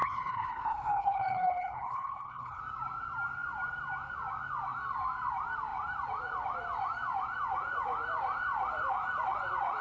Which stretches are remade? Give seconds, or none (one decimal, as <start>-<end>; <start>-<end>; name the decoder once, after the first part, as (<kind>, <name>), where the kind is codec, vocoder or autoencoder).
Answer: 0.0-2.6 (codec, HILCodec)